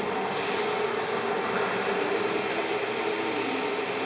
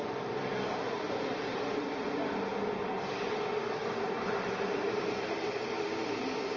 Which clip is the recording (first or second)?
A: first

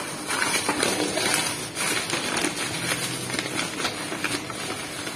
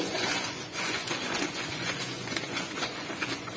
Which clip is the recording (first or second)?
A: first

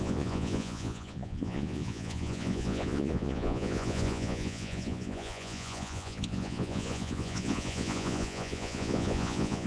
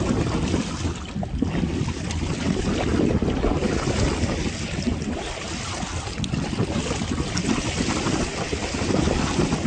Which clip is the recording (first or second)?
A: second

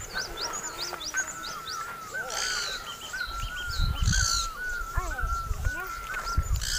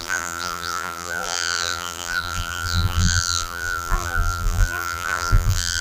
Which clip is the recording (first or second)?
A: first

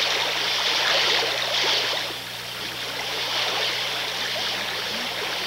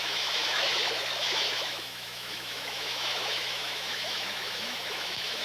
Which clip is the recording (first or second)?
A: first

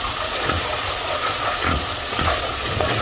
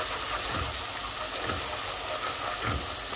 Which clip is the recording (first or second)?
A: second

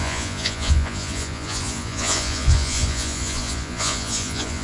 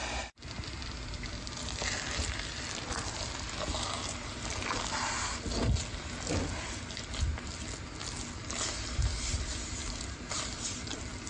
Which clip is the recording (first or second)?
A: second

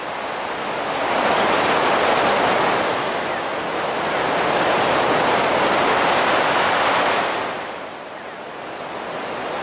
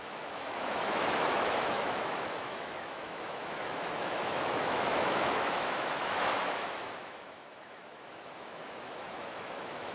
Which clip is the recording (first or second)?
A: first